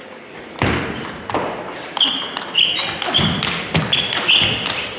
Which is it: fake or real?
real